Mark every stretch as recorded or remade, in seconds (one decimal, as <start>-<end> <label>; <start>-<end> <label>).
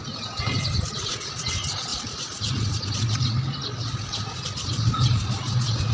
0.0-5.9 recorded